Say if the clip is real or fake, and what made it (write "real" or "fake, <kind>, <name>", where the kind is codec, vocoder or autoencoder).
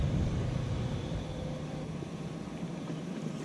fake, vocoder, BigVGAN v2